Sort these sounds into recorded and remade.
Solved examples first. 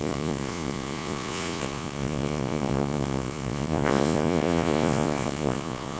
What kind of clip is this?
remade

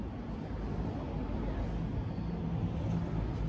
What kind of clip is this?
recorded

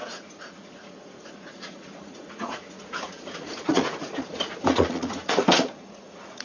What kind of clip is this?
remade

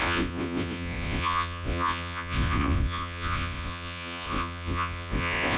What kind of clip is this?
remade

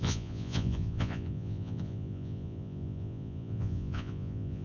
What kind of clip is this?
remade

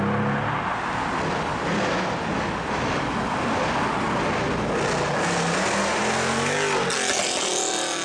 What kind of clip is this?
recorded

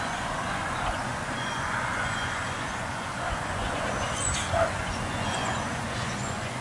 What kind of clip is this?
remade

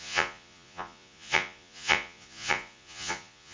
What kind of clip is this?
remade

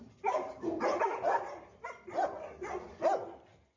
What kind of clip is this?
recorded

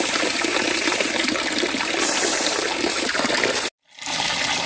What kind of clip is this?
recorded